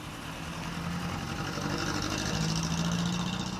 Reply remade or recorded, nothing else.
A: recorded